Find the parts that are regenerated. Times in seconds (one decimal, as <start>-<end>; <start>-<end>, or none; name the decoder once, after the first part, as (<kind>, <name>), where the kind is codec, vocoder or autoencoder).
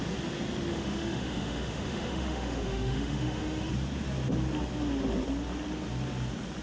0.7-3.7 (autoencoder, DAC-VAE)